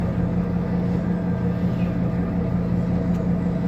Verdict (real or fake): real